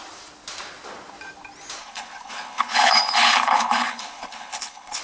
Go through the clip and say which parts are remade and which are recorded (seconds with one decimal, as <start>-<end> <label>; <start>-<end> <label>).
0.0-1.8 recorded; 1.8-5.0 remade